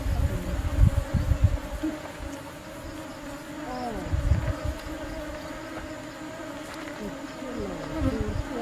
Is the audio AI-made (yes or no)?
no